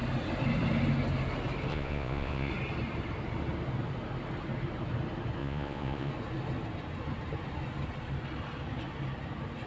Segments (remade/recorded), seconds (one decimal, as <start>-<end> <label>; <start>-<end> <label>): 0.0-1.7 recorded; 1.7-2.5 remade; 2.5-5.4 recorded; 5.4-6.1 remade; 6.1-9.7 recorded